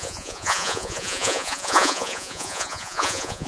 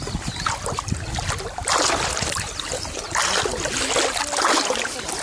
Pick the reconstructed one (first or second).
first